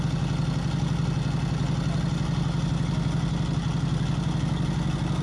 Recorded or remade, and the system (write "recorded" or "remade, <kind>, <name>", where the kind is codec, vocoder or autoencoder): recorded